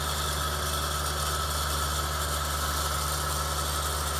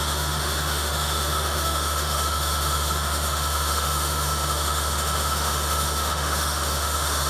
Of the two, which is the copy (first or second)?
second